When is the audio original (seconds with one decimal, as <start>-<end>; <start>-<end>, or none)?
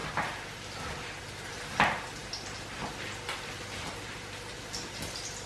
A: 0.0-5.5